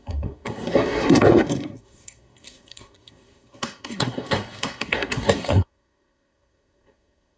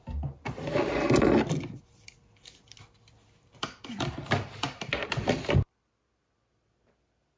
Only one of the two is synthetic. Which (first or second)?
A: first